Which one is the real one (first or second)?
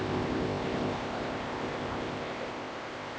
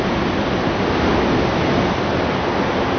second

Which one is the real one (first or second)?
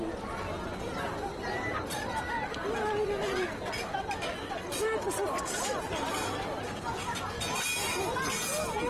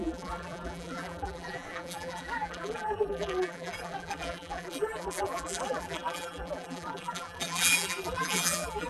first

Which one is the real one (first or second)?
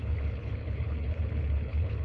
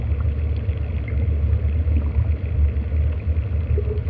second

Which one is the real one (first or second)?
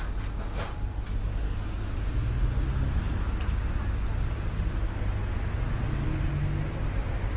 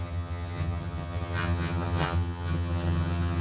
first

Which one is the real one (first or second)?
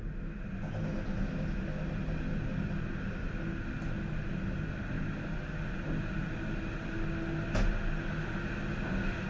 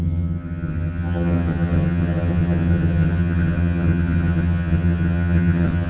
first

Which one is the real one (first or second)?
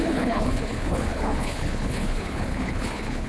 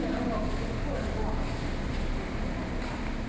second